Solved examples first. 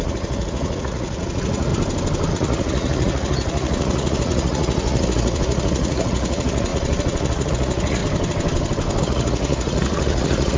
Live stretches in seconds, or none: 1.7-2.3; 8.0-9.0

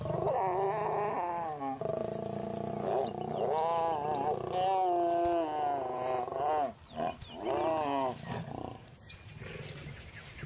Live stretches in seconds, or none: 0.0-10.5

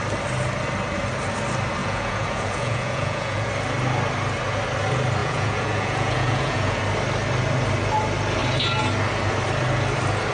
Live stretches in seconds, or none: 0.0-1.8; 3.5-5.2; 6.8-10.3

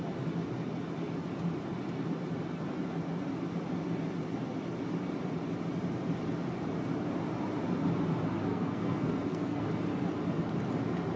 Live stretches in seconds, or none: 0.0-8.5; 9.7-11.2